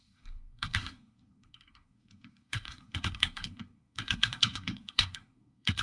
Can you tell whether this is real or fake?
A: fake